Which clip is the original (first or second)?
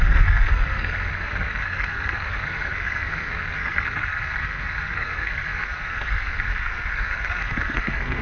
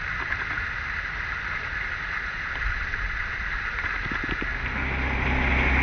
second